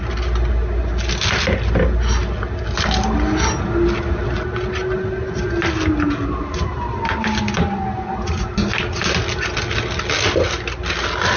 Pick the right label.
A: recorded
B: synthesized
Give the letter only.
A